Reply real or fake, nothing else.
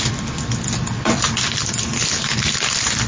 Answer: real